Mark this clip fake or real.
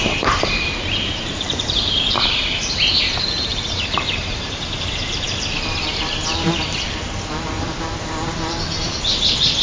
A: fake